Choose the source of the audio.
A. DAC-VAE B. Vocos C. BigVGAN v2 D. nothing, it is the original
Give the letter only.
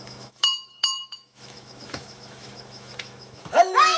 A